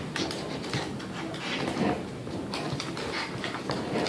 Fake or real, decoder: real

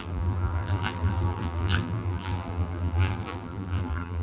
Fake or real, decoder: fake, vocoder, BigVGAN v2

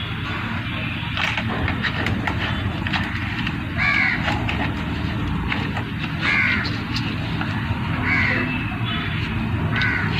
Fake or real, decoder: real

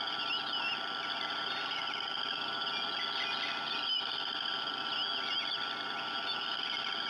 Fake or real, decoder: real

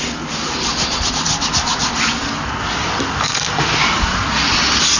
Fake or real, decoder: real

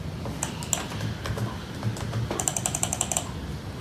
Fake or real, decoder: real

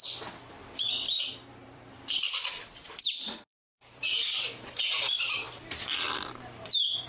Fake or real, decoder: fake, vocoder, BigVGAN v2